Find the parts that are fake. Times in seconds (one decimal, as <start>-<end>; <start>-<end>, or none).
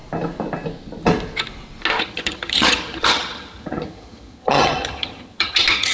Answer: 2.0-5.9